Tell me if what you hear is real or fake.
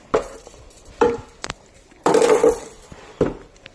fake